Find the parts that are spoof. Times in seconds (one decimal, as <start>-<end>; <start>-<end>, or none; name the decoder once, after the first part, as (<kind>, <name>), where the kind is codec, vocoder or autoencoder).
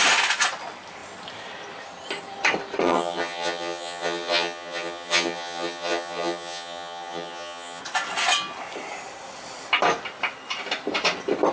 2.8-7.8 (vocoder, HiFi-GAN)